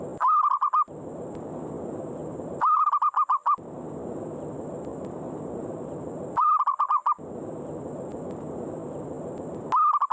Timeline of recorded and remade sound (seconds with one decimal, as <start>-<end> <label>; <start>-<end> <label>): 0.0-2.2 recorded; 2.2-2.9 remade; 2.9-4.9 recorded; 4.9-7.2 remade; 7.2-10.1 recorded